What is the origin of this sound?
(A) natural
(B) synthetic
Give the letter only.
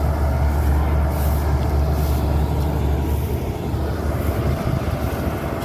A